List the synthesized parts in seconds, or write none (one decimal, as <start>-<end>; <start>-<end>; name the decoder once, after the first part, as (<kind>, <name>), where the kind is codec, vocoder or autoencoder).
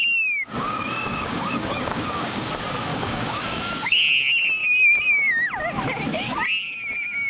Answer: 0.5-2.5 (codec, DAC); 2.9-4.0